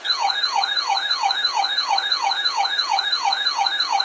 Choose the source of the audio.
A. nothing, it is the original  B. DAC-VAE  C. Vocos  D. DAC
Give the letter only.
C